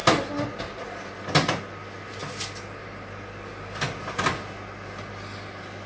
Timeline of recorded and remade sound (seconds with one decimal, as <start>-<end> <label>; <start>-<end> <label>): 0.0-5.9 recorded